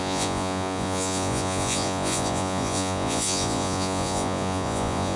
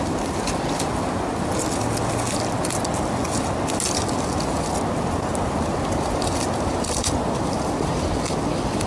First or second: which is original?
second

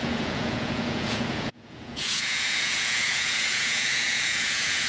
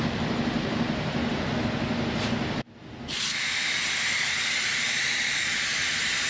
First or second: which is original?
second